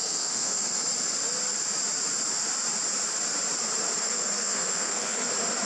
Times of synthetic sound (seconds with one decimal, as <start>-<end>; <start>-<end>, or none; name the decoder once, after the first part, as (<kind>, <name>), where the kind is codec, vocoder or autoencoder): 0.0-0.8 (codec, SNAC); 4.0-5.3